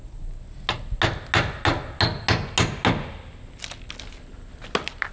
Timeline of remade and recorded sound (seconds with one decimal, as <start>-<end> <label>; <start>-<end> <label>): 0.0-5.1 recorded